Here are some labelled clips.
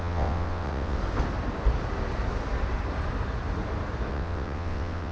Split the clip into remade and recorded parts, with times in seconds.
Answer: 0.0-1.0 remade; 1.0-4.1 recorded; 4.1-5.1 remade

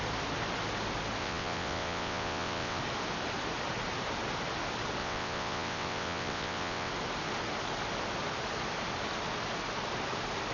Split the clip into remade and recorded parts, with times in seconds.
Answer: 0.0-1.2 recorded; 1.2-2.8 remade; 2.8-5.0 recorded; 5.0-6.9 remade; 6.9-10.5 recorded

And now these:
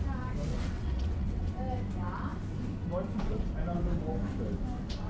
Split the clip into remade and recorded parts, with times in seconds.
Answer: 0.0-0.5 recorded; 0.5-1.5 remade; 1.5-5.1 recorded